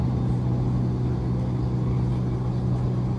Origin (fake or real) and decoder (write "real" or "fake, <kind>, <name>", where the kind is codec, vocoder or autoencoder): real